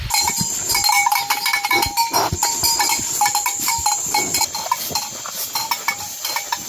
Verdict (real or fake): fake